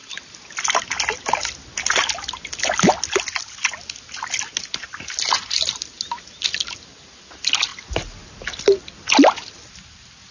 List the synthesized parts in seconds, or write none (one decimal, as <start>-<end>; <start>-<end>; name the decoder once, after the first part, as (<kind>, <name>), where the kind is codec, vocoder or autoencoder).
none